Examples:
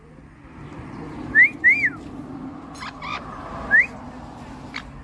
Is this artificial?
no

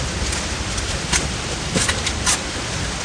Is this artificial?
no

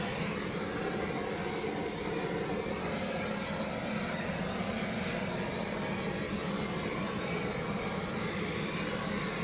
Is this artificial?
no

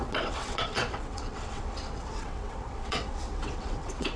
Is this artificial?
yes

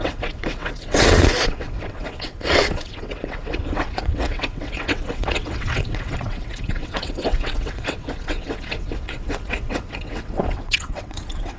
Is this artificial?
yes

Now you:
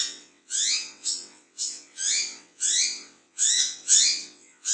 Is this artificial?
yes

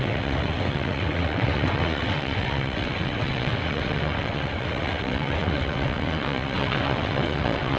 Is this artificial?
yes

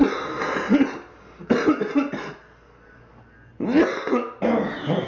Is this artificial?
no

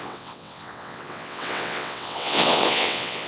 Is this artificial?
yes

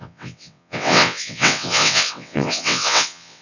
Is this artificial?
yes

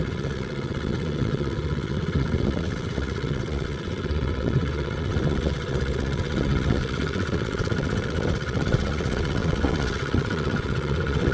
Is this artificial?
yes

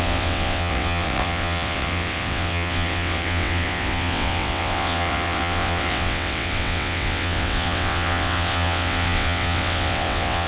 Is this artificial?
yes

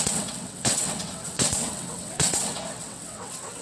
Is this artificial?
yes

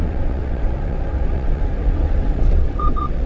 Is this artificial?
yes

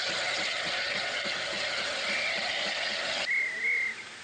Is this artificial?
no